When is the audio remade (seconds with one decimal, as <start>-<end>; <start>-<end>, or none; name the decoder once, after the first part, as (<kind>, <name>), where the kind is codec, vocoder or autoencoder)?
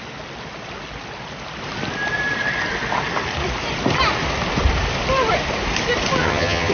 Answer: 6.2-6.7 (vocoder, HiFi-GAN)